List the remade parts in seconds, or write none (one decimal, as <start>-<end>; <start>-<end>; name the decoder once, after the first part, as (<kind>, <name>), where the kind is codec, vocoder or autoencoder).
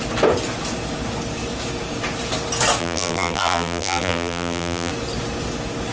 2.8-4.9 (vocoder, BigVGAN v2)